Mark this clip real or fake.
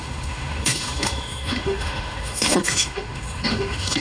fake